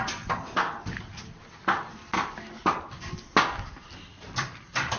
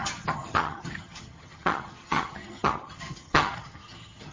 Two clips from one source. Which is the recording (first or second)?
first